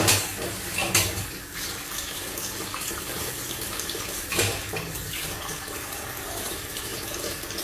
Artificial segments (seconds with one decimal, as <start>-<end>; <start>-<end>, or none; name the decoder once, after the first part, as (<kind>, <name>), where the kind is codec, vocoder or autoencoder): 0.0-7.6 (codec, DAC)